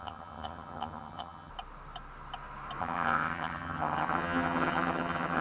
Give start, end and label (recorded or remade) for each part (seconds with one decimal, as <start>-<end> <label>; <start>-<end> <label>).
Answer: 0.0-1.5 remade; 1.5-2.8 recorded; 2.8-5.4 remade